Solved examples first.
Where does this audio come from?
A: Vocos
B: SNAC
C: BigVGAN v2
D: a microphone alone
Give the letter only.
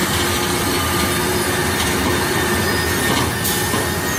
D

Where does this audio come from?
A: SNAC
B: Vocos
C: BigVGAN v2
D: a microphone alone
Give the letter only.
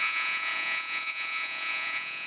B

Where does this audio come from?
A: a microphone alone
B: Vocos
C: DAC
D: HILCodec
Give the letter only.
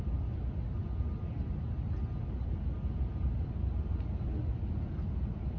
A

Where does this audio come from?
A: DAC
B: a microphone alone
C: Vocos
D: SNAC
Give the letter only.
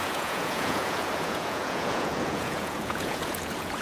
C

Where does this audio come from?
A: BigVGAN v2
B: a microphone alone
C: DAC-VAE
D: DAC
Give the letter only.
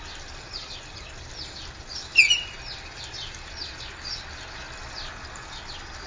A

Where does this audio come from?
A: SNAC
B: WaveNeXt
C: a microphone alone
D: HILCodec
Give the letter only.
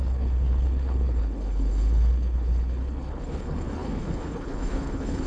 D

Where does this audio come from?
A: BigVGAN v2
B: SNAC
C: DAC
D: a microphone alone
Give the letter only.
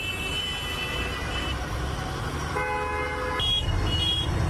D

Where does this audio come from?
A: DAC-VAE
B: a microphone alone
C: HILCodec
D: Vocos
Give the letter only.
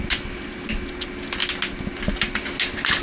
B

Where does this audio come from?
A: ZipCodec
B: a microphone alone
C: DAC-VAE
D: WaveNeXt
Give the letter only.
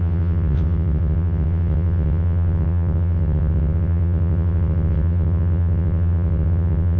D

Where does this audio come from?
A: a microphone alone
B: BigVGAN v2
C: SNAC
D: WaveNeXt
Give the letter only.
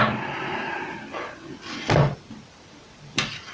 B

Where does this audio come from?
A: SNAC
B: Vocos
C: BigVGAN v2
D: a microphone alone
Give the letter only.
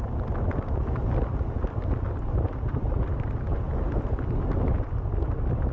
D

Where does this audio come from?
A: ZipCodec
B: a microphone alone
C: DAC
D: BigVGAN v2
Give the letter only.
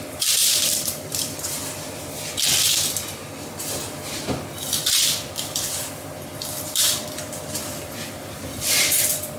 D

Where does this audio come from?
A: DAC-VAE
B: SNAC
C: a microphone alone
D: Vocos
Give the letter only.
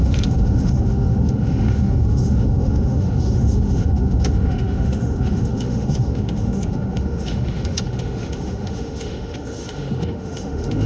A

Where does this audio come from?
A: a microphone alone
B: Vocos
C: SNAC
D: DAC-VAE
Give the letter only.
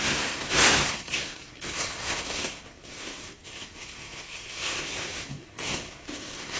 C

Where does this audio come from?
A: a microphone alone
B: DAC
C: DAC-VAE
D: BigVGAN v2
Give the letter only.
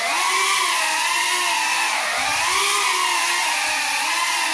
A